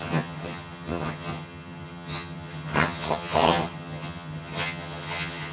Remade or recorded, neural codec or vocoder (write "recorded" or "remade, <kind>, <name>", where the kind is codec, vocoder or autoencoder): remade, vocoder, HiFi-GAN